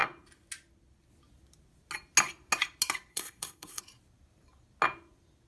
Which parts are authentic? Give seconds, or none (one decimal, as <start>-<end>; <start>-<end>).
0.0-3.1; 3.8-5.5